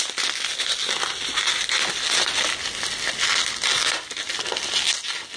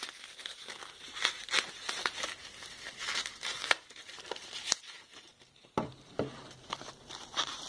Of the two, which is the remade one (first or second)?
second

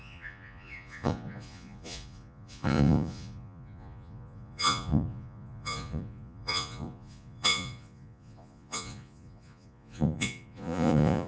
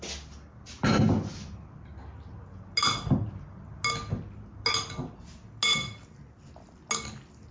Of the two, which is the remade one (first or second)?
first